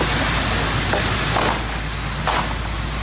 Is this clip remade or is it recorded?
recorded